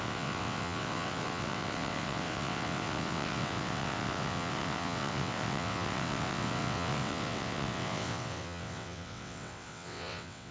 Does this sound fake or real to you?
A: fake